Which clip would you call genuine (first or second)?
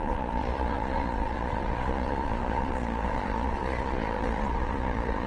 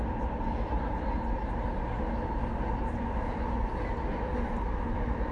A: second